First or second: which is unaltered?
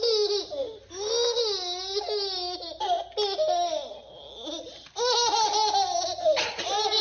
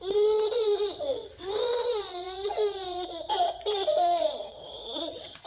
first